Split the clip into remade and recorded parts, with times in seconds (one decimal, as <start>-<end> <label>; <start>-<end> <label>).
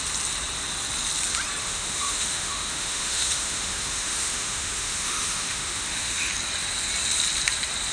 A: 0.0-1.6 recorded; 1.6-6.3 remade; 6.3-7.9 recorded